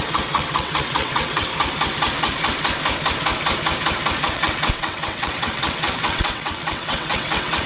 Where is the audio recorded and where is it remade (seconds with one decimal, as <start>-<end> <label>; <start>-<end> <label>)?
0.0-1.5 remade; 1.5-4.2 recorded; 4.2-7.7 remade